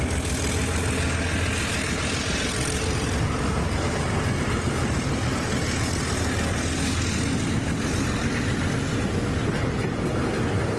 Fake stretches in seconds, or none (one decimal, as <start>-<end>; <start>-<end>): none